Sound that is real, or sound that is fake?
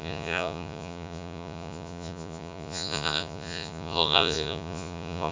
fake